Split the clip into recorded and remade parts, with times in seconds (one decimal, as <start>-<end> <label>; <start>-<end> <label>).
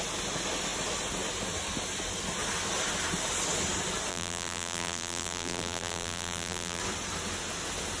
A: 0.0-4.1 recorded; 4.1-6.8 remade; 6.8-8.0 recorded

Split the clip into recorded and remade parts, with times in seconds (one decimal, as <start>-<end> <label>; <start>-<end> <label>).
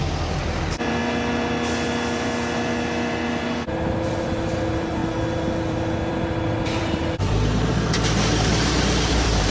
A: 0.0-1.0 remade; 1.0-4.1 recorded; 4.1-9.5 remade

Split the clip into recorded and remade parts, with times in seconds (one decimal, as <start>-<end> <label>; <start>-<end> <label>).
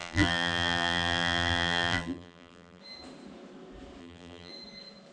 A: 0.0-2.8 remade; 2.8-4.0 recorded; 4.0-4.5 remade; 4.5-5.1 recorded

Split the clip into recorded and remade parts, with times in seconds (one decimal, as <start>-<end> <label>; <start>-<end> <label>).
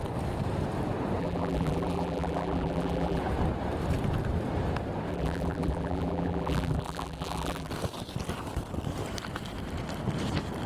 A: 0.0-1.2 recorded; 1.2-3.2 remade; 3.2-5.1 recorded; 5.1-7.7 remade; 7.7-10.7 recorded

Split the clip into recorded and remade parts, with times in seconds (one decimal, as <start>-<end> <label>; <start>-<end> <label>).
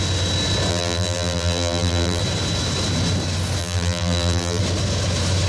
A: 0.0-0.7 recorded; 0.7-2.2 remade; 2.2-3.6 recorded; 3.6-4.6 remade; 4.6-5.5 recorded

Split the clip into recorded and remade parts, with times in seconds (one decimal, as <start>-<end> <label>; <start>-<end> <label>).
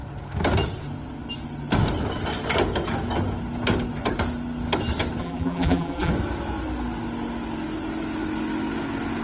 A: 0.0-5.2 recorded; 5.2-6.1 remade; 6.1-9.2 recorded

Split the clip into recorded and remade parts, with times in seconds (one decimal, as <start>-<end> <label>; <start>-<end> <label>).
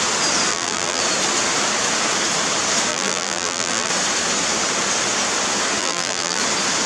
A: 0.0-0.5 recorded; 0.5-1.0 remade; 1.0-2.9 recorded; 2.9-3.9 remade; 3.9-5.8 recorded; 5.8-6.4 remade; 6.4-6.9 recorded